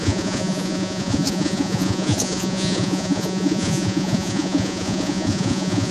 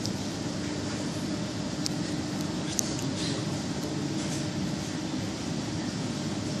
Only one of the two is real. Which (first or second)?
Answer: second